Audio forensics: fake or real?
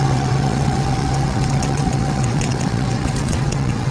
fake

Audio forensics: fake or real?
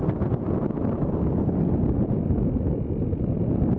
real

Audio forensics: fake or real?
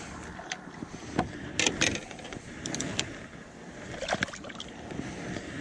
real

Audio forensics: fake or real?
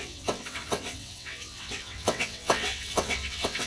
fake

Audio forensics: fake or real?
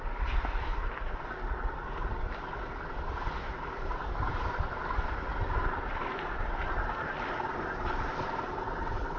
real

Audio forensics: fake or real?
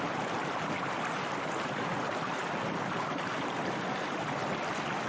real